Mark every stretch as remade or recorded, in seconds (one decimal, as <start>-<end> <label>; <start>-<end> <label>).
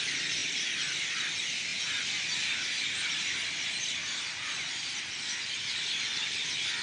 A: 0.0-6.8 recorded